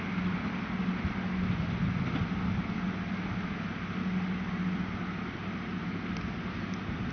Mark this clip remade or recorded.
recorded